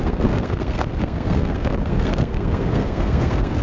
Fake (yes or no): yes